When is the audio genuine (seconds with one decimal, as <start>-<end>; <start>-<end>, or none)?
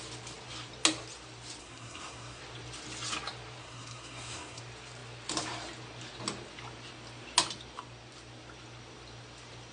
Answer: 0.0-1.6; 2.4-3.6; 4.6-9.7